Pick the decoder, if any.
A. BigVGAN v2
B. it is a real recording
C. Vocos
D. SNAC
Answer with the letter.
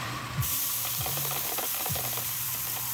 A